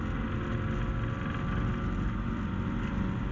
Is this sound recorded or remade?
recorded